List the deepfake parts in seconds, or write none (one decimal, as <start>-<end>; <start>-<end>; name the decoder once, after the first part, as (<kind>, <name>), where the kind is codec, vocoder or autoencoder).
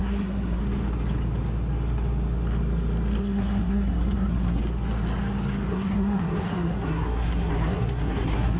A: 0.0-0.6 (codec, SNAC); 3.2-4.6; 5.7-8.6